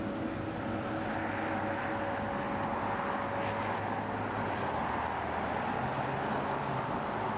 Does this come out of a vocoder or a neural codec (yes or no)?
no